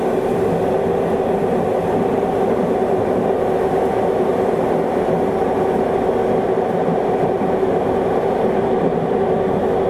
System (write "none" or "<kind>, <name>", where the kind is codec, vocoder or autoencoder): none